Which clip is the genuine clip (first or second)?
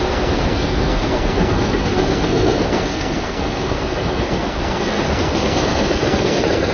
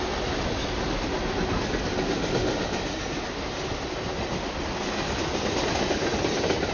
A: second